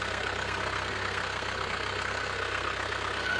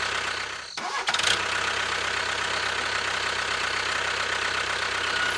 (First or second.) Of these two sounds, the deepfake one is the first